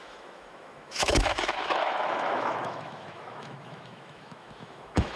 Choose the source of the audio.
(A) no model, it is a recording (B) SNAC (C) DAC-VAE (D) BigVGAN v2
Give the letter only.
C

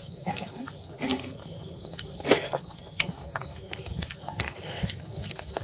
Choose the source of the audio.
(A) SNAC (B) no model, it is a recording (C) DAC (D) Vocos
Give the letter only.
A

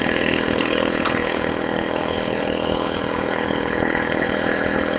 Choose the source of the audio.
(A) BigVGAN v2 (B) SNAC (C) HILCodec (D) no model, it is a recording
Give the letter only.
C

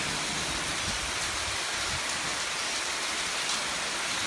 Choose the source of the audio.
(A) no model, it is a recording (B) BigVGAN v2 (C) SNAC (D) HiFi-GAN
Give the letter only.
A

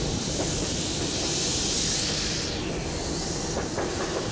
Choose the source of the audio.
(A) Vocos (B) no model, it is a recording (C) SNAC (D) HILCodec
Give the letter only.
B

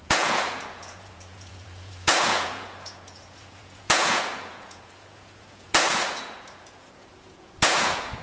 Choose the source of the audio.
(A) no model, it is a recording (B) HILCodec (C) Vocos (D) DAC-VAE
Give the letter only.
C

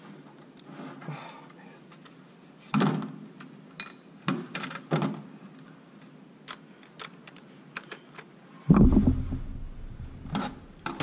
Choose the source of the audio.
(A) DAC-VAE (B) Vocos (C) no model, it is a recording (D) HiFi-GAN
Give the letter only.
C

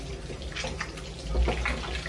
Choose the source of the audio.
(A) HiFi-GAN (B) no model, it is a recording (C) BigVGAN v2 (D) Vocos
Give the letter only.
B